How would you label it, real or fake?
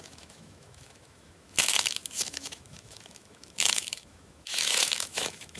fake